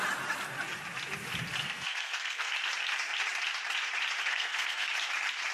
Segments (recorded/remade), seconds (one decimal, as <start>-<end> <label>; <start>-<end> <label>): 0.0-1.6 recorded; 1.6-2.5 remade; 2.5-4.3 recorded; 4.3-4.9 remade; 4.9-5.5 recorded